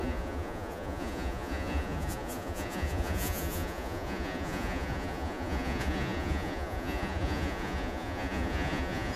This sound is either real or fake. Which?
fake